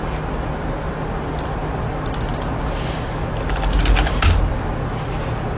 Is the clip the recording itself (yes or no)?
yes